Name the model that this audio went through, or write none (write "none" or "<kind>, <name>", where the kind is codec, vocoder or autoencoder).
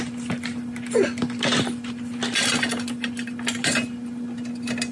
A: none